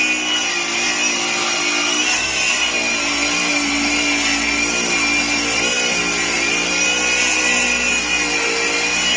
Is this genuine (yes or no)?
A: yes